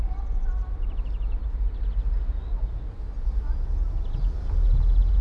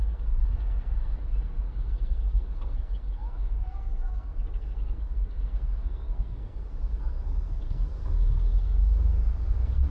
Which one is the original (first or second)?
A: first